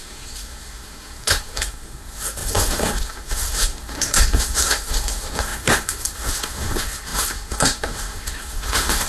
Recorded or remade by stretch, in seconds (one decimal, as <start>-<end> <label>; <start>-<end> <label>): 0.0-9.1 remade